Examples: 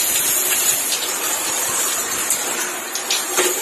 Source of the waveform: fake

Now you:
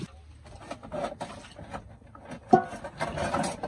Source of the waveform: real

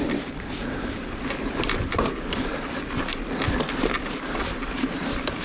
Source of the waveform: real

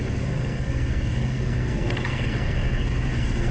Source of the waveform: fake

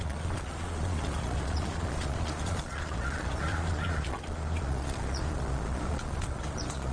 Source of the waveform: fake